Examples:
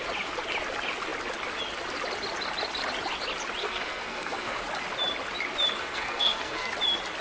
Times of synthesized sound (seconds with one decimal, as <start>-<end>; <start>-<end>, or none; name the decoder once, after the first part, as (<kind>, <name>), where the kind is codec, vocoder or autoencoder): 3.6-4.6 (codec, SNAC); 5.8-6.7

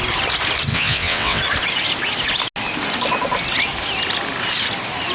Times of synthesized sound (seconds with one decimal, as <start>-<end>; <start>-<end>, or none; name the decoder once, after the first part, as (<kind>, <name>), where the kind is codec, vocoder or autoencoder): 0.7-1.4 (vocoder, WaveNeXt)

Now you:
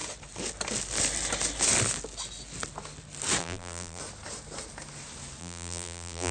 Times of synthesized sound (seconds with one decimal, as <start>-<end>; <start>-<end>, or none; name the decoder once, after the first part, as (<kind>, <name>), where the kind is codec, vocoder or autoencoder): 3.4-4.0 (vocoder, BigVGAN v2); 5.4-6.3

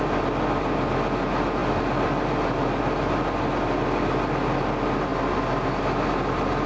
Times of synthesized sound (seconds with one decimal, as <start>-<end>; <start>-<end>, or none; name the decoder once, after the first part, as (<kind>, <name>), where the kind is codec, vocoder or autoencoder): none

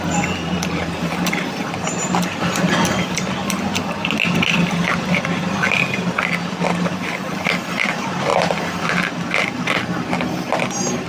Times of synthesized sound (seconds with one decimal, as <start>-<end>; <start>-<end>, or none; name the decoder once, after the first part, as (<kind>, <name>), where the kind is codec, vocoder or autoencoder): none